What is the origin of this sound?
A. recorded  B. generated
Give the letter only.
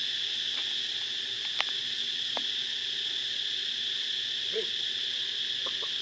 A